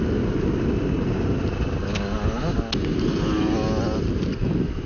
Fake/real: real